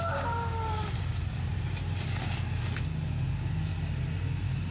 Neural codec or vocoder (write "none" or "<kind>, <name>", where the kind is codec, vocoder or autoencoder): none